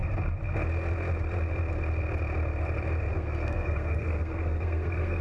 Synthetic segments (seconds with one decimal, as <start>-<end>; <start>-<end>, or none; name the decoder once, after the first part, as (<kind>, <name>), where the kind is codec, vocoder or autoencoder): 3.1-5.2 (codec, SNAC)